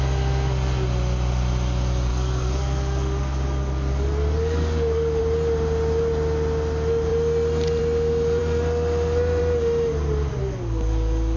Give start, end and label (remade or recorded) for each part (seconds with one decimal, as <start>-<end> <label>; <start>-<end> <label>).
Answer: 0.0-2.1 recorded; 2.1-5.2 remade; 5.2-10.4 recorded; 10.4-11.4 remade